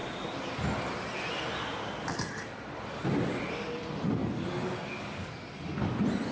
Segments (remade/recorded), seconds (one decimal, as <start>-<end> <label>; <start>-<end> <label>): 0.0-6.3 recorded